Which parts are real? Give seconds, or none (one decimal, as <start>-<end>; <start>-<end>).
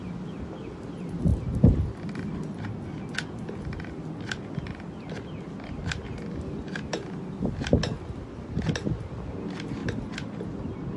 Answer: 0.0-11.0